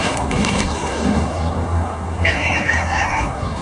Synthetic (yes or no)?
yes